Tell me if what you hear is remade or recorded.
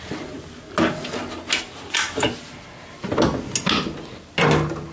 recorded